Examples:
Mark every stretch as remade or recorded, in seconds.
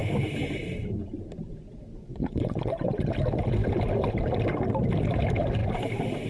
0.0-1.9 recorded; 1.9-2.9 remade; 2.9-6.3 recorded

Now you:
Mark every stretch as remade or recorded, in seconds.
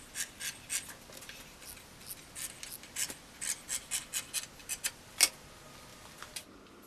0.0-6.9 recorded